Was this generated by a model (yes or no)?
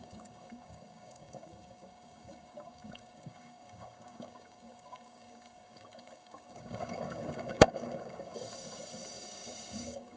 yes